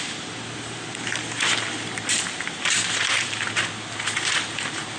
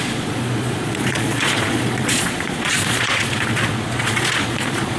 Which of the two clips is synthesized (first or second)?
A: second